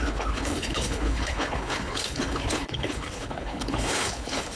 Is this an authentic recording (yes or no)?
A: no